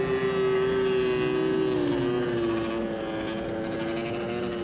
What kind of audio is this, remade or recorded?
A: recorded